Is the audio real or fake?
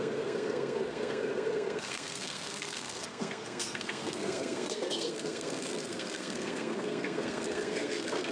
fake